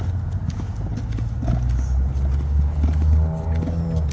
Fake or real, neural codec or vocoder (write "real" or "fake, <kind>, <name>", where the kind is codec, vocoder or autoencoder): real